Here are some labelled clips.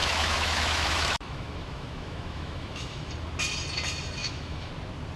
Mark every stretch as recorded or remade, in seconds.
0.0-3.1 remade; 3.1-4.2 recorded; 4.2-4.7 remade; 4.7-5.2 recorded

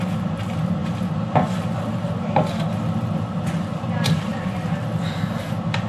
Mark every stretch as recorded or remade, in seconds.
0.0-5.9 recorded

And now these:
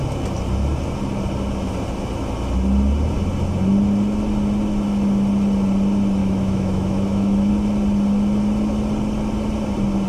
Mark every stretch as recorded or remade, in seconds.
0.0-6.2 recorded; 6.2-7.5 remade; 7.5-10.1 recorded